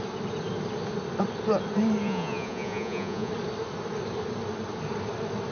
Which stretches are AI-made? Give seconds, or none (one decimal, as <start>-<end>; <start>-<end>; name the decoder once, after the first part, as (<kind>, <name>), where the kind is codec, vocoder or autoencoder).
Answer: 2.0-3.3 (vocoder, Vocos)